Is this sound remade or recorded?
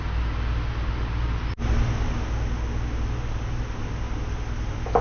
recorded